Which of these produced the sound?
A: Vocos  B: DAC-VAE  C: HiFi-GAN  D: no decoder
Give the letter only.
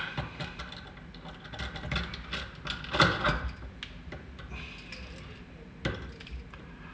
D